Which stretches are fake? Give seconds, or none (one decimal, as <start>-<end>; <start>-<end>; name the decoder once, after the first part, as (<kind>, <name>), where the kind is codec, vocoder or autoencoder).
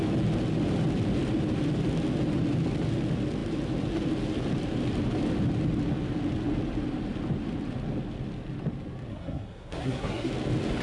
9.1-10.3 (codec, SNAC)